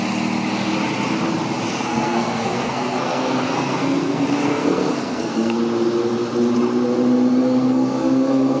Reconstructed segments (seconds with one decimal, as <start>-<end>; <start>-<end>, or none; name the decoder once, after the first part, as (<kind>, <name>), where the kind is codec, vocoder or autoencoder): 1.7-5.6 (codec, SNAC); 7.4-8.6